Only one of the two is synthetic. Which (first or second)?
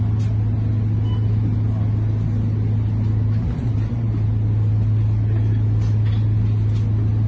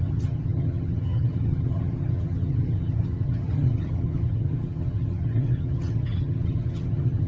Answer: second